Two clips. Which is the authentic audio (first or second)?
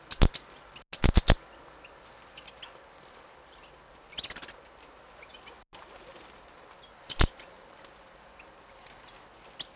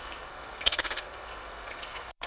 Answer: first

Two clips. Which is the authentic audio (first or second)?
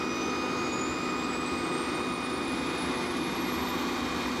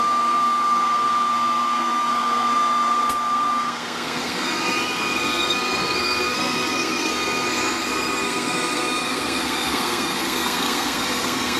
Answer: first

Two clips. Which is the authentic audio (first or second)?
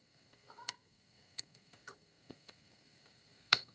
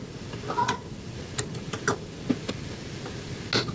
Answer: second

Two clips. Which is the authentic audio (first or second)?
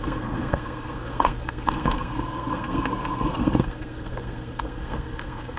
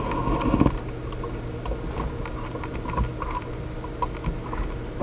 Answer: second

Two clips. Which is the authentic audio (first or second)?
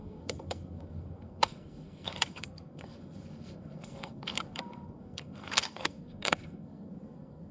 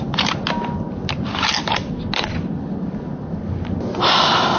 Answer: second